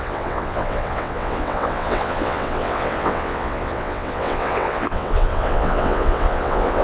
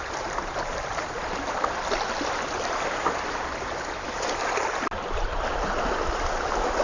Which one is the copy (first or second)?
first